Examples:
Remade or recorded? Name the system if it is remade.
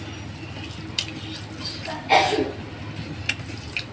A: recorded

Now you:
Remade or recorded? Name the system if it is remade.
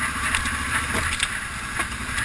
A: recorded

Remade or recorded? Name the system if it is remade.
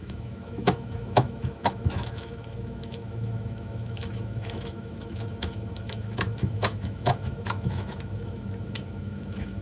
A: remade, autoencoder, DAC-VAE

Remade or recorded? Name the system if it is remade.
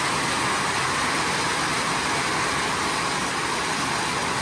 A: recorded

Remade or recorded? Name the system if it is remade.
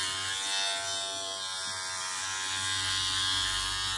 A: recorded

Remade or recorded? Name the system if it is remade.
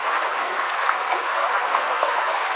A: remade, codec, SNAC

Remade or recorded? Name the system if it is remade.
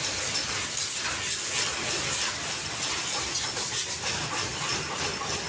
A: recorded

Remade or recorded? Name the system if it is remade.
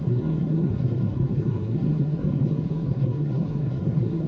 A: remade, codec, SNAC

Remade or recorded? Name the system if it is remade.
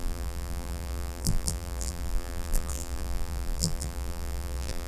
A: remade, vocoder, BigVGAN v2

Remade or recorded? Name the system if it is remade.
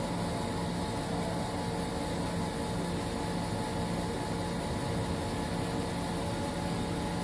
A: recorded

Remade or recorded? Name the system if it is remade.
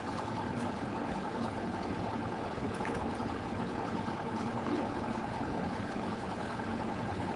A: remade, codec, HILCodec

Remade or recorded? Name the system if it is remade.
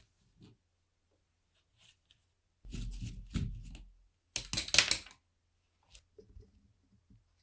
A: recorded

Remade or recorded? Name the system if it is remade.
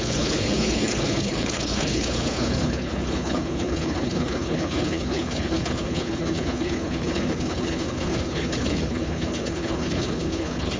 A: remade, codec, HILCodec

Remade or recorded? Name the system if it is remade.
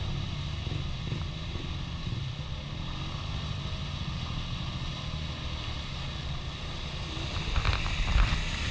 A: recorded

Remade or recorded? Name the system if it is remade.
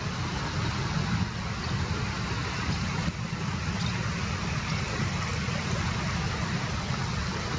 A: recorded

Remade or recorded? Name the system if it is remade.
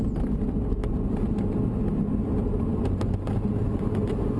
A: recorded